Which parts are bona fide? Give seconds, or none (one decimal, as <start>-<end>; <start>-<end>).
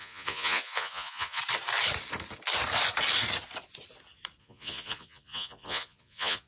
1.4-4.4